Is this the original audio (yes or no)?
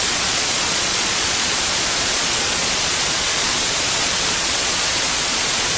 no